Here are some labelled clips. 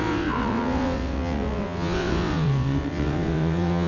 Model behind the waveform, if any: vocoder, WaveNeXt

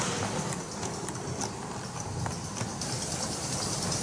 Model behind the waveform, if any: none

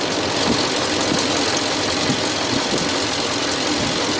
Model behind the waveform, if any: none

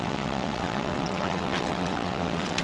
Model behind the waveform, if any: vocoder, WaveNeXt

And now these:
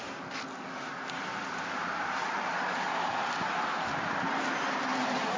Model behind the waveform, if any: none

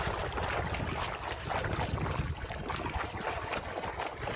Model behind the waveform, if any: none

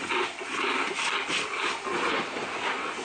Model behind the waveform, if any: none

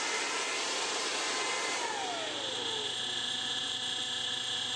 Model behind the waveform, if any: none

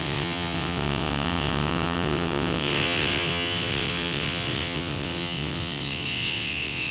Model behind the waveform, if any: vocoder, WaveNeXt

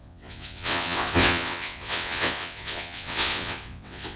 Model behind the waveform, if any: vocoder, WaveNeXt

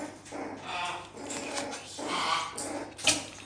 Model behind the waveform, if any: none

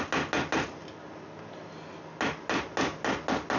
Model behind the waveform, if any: none